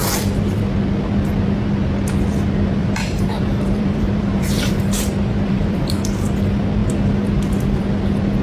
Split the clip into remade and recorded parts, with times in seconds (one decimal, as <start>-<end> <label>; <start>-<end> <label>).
0.0-2.8 recorded; 2.8-5.8 remade; 5.8-8.4 recorded